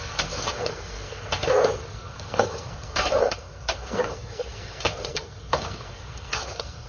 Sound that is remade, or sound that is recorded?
remade